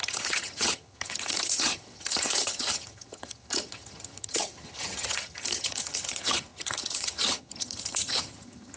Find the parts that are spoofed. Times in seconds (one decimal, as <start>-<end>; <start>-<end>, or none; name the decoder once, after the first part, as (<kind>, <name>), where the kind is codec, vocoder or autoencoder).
0.0-8.8 (vocoder, HiFi-GAN)